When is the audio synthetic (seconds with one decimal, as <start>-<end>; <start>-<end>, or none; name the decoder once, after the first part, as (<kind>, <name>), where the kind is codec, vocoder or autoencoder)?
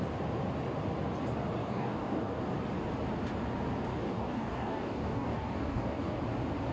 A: 1.6-2.4 (codec, DAC); 3.9-6.2